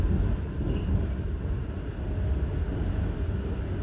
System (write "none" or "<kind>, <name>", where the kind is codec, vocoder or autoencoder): none